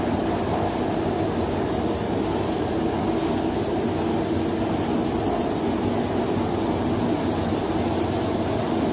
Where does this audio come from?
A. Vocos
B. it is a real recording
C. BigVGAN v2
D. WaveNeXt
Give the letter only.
C